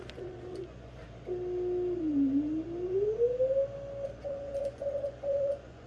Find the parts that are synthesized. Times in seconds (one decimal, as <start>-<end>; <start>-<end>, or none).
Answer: 0.0-1.0; 4.2-5.9